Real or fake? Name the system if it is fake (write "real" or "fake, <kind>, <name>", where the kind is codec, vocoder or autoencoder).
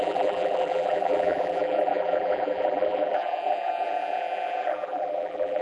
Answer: fake, vocoder, BigVGAN v2